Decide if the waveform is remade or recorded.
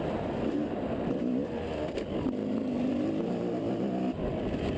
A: recorded